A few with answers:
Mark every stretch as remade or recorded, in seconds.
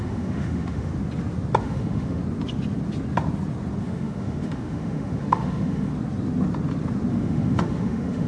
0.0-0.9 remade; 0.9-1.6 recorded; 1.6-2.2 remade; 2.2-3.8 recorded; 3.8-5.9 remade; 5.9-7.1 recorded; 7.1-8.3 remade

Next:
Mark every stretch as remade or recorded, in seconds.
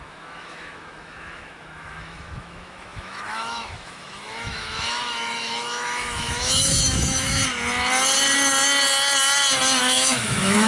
0.0-7.4 remade; 7.4-9.8 recorded; 9.8-10.7 remade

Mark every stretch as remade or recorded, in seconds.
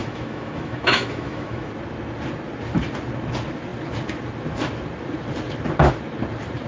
0.0-1.7 remade; 1.7-6.7 recorded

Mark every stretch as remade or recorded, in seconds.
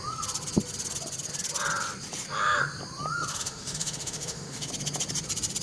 0.0-3.3 recorded; 3.3-4.7 remade; 4.7-5.6 recorded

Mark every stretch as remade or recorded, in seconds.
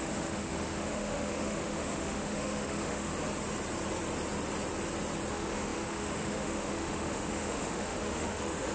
0.0-3.1 remade; 3.1-5.3 recorded; 5.3-8.7 remade